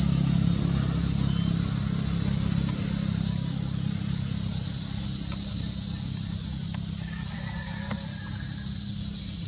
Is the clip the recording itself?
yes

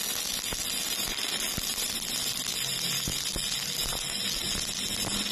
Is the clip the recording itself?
yes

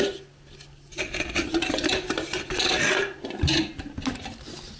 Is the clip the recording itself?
yes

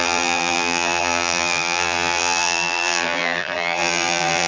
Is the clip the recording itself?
no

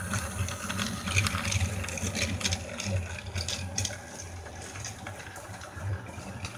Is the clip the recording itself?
yes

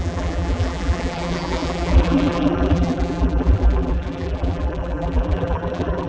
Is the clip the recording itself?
no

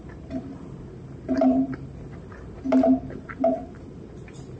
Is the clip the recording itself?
no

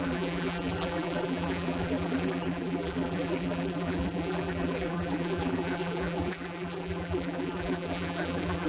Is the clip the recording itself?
no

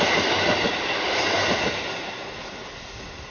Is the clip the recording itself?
yes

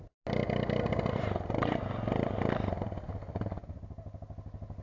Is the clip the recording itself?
yes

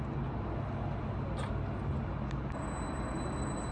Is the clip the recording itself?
yes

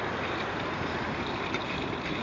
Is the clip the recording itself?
no